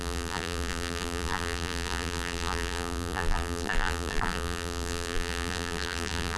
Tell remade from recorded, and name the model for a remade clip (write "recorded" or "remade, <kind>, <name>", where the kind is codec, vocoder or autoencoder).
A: remade, vocoder, BigVGAN v2